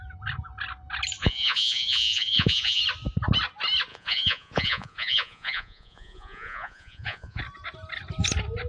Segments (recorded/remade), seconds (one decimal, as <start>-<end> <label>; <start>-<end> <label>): 0.0-1.2 recorded; 1.2-2.8 remade; 2.8-3.9 recorded; 3.9-7.4 remade; 7.4-8.7 recorded